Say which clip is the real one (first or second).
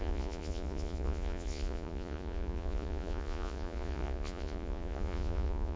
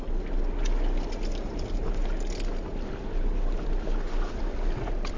second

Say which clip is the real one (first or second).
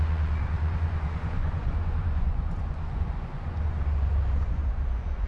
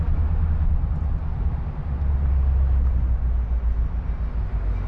second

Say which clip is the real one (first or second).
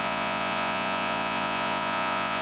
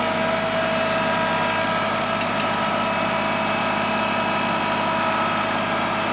second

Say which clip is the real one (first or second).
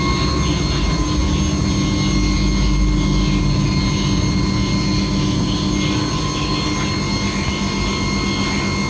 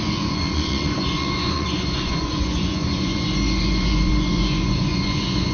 first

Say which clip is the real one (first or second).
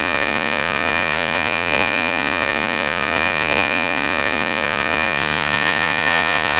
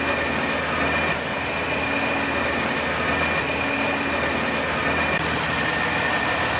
second